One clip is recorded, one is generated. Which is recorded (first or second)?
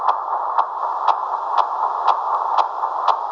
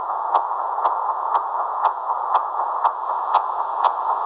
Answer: first